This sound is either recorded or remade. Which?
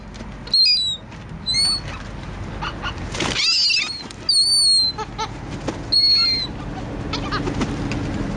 recorded